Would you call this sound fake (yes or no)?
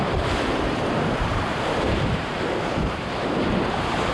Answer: yes